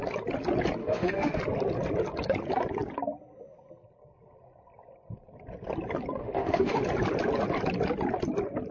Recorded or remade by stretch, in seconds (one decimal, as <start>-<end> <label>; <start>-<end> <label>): 0.0-0.8 recorded; 0.8-1.4 remade; 1.4-6.2 recorded; 6.2-6.8 remade; 6.8-8.7 recorded